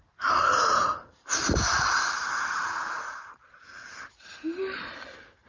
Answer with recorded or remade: remade